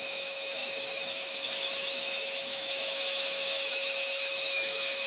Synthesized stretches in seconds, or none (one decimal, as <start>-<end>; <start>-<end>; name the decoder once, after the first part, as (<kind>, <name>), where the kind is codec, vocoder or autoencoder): 0.0-5.1 (autoencoder, DAC-VAE)